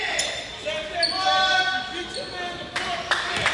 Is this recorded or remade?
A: recorded